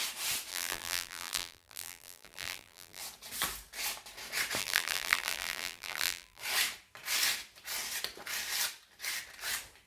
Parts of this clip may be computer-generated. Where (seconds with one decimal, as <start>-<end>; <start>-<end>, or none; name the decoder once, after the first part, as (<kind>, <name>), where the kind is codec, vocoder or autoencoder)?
0.5-3.0 (vocoder, BigVGAN v2); 4.6-6.4